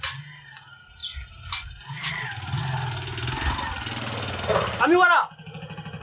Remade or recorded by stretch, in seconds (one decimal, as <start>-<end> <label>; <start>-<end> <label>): 0.0-6.0 recorded